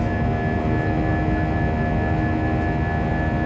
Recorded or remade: recorded